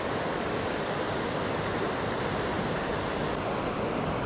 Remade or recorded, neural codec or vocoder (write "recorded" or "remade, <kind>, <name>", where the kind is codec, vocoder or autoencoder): recorded